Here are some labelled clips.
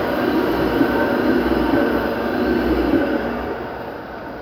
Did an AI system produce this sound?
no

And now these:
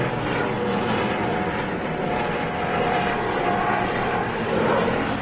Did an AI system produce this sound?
yes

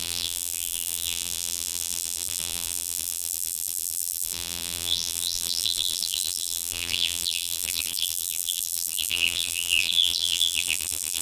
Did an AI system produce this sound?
yes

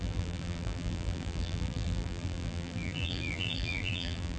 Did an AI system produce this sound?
yes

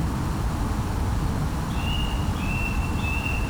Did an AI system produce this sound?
no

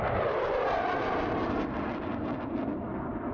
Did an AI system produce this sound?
yes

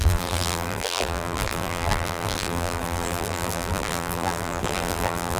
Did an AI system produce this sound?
yes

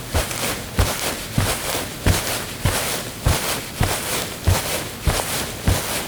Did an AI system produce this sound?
no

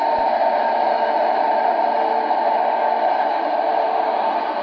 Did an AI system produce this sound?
no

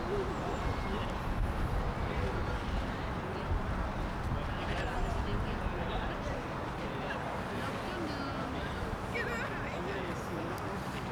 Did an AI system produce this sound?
no